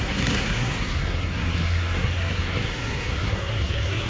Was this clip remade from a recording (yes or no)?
yes